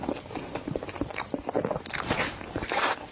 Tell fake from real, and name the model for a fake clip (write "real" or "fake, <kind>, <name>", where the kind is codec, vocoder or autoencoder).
real